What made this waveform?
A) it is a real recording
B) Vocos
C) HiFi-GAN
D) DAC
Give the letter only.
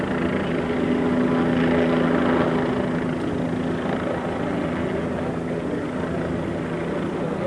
A